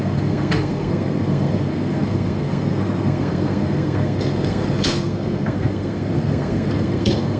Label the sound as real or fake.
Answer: fake